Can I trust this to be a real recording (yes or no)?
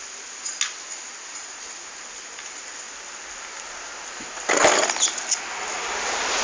yes